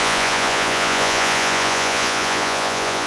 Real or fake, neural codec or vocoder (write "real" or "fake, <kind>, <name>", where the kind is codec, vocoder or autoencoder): fake, vocoder, Vocos